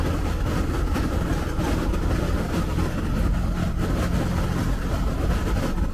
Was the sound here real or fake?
real